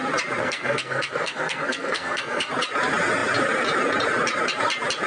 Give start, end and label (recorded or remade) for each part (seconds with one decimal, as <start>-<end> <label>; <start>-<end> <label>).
0.0-0.4 recorded; 0.4-2.5 remade; 2.5-5.1 recorded